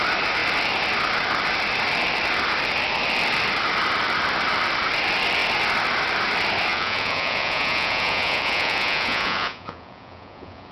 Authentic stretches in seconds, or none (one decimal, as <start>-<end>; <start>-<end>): 0.0-6.7